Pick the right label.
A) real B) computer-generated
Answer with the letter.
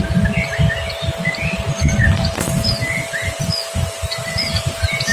A